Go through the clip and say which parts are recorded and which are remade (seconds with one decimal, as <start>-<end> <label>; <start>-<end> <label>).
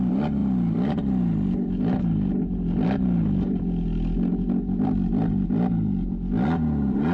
0.0-7.1 recorded